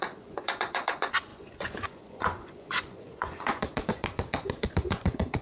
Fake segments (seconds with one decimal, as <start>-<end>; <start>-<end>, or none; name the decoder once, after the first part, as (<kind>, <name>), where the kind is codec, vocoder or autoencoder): 0.0-5.4 (vocoder, Vocos)

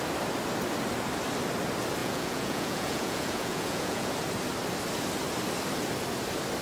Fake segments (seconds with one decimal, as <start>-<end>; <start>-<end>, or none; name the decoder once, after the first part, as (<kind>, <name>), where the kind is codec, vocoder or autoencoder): 2.0-4.1 (vocoder, Vocos)

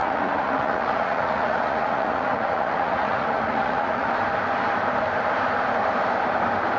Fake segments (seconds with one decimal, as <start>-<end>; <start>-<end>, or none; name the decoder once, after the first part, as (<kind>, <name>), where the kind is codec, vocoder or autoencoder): 0.0-4.1 (vocoder, Vocos)

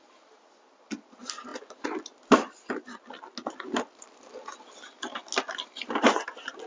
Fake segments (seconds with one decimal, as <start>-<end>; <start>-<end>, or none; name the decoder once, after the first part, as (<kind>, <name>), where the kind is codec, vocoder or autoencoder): none

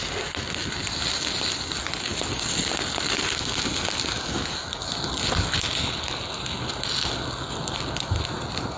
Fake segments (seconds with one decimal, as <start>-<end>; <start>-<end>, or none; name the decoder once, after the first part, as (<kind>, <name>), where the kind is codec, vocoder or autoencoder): none